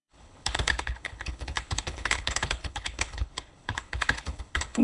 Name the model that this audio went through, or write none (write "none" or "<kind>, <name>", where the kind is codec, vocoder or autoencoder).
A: codec, HILCodec